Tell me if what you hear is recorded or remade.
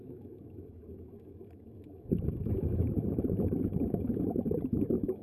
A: remade